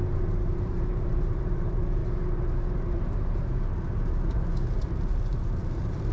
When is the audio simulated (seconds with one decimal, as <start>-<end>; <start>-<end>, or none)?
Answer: 0.0-2.0; 5.2-6.1